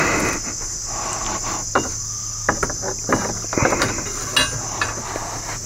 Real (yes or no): yes